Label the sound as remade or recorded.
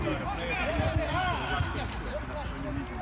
recorded